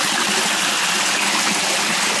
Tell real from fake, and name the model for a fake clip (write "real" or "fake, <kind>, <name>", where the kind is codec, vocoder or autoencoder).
real